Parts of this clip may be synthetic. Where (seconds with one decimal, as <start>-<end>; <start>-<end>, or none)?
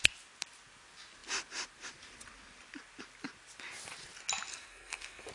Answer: 4.5-5.3